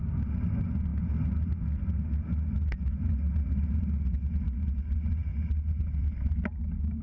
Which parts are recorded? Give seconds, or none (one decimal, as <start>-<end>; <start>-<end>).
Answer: 0.0-7.0